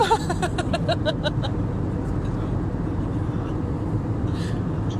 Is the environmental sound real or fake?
real